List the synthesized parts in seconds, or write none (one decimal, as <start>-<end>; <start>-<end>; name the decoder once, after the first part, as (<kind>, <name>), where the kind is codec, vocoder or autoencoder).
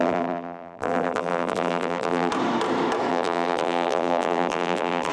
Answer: 0.0-2.3 (vocoder, BigVGAN v2); 3.1-5.1